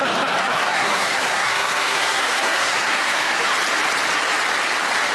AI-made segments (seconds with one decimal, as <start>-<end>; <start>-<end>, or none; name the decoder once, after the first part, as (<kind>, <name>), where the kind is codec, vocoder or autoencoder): 0.4-3.4 (codec, SNAC)